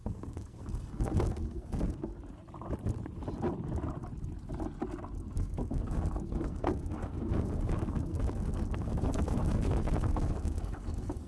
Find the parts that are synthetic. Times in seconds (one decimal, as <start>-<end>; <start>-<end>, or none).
0.0-2.1; 5.2-11.3